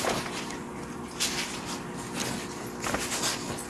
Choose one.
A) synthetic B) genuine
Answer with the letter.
B